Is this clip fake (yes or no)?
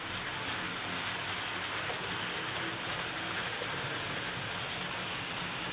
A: no